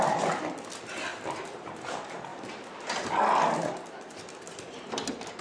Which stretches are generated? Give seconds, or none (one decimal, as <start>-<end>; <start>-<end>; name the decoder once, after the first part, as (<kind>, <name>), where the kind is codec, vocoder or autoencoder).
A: 1.1-1.7 (vocoder, BigVGAN v2)